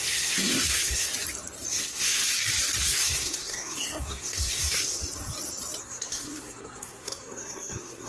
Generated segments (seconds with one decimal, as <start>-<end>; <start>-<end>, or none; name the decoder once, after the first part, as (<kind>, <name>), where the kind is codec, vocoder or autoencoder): 0.0-1.1 (codec, SNAC); 1.7-2.2; 2.8-5.0; 5.8-8.1